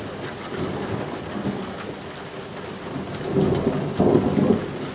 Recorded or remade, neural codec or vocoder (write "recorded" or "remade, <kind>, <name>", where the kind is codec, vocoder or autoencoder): recorded